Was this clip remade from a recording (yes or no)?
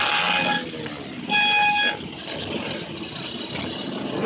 no